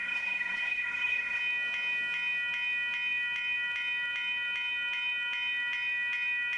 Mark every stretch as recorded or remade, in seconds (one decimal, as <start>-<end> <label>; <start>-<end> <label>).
0.0-1.4 remade; 1.4-6.6 recorded